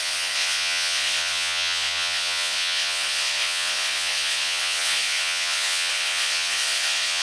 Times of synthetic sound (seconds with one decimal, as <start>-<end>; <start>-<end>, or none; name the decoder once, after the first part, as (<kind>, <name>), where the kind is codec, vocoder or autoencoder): 0.0-7.2 (vocoder, Vocos)